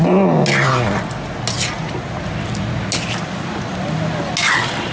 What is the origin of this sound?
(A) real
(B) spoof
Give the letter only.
A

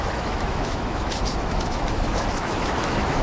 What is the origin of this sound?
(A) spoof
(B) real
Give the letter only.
A